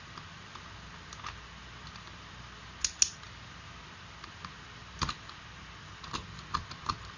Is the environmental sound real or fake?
real